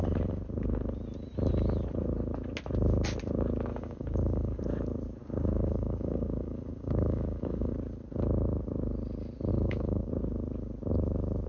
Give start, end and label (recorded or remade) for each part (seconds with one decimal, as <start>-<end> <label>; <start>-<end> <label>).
0.0-3.7 recorded; 3.7-4.6 remade; 4.6-5.2 recorded; 5.2-7.7 remade; 7.7-9.5 recorded; 9.5-10.1 remade; 10.1-11.5 recorded